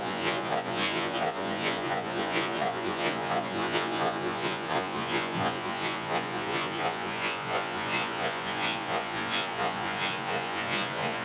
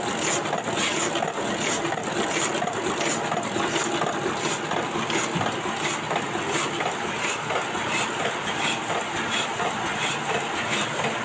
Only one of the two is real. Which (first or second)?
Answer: second